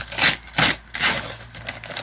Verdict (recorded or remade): recorded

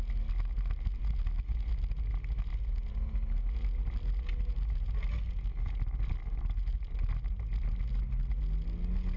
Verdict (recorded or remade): recorded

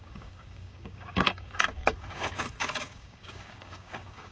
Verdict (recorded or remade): remade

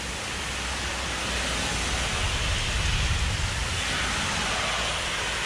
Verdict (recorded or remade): recorded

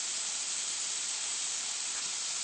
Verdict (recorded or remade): recorded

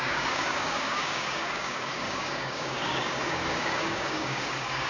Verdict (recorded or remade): remade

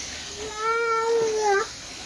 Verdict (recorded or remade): remade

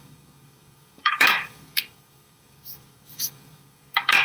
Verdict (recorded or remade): remade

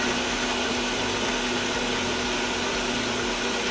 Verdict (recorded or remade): recorded